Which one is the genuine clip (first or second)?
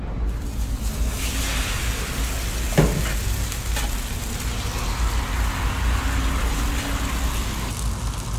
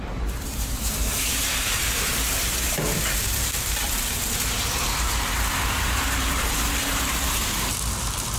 first